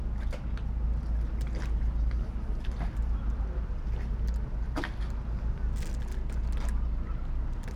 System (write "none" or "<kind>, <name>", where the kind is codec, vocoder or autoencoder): none